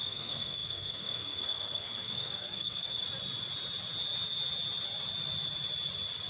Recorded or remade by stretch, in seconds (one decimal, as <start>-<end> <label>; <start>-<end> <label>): 0.0-3.0 remade; 3.0-6.3 recorded